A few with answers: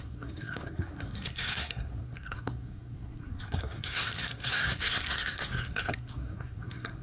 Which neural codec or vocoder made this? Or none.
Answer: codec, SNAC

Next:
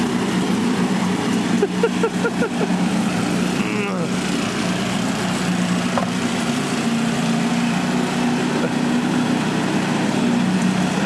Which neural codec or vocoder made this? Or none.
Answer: none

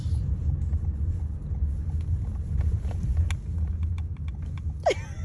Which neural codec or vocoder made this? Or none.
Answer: none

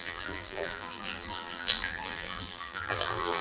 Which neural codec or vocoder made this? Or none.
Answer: vocoder, BigVGAN v2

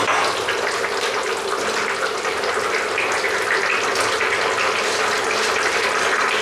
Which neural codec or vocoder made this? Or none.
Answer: none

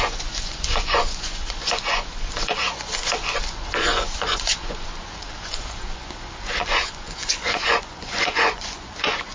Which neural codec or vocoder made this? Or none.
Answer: vocoder, Vocos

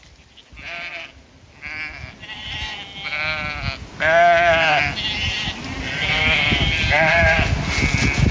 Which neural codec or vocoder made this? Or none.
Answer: none